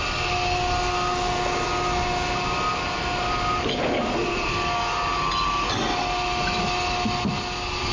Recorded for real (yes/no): yes